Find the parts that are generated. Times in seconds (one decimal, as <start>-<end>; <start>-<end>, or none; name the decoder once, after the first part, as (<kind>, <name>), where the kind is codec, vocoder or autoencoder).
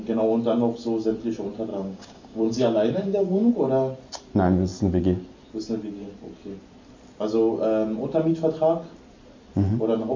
1.7-3.5 (codec, DAC)